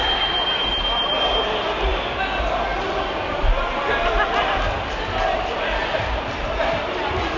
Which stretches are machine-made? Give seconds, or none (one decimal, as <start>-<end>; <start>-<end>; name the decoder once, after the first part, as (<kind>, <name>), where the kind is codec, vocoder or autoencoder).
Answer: none